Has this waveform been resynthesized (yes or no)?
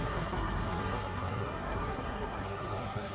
yes